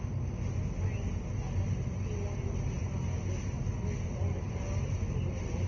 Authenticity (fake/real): real